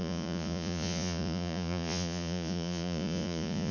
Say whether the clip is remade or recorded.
remade